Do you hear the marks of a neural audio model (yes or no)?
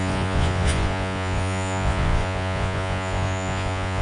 yes